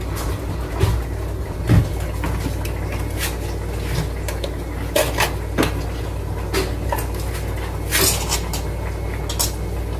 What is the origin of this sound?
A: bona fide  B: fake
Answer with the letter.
A